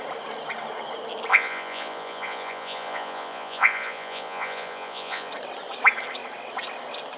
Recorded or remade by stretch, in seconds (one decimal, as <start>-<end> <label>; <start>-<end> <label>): 0.0-1.3 recorded; 1.3-5.3 remade; 5.3-7.2 recorded